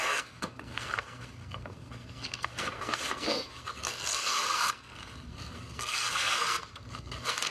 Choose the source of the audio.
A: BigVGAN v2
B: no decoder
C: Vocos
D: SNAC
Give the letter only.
D